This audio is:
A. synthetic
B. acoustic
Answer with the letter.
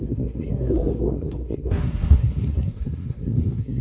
A